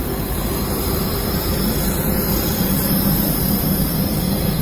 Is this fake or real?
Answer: fake